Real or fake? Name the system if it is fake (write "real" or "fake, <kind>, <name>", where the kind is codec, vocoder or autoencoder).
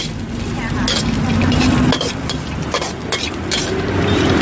real